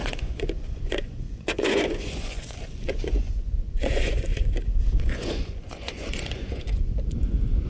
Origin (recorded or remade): remade